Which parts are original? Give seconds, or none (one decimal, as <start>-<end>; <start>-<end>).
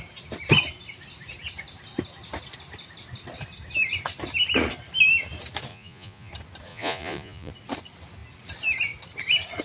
0.0-5.7; 6.3-6.7; 7.5-9.6